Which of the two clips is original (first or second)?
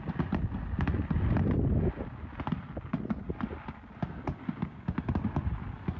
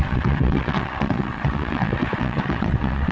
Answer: first